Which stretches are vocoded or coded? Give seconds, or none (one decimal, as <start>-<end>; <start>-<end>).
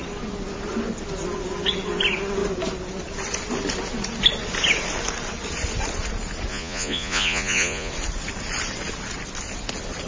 6.5-7.9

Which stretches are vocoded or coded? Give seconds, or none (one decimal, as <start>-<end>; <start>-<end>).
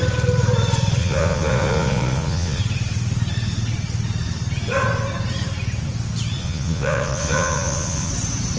1.0-2.6; 6.4-8.1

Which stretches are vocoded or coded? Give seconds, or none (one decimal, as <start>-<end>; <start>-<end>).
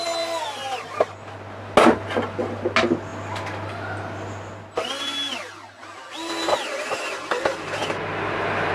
none